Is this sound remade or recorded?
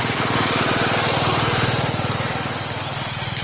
recorded